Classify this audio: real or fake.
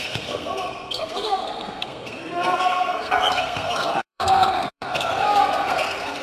fake